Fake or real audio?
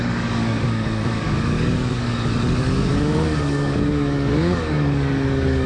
fake